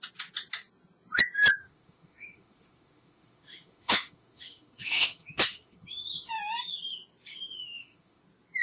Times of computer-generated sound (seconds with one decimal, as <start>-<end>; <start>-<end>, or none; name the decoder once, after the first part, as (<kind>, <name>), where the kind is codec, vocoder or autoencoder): 1.6-6.3 (autoencoder, DAC-VAE); 7.3-8.2